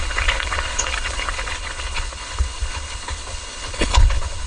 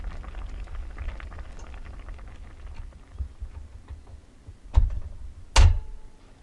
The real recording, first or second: second